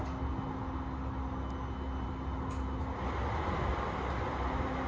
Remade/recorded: recorded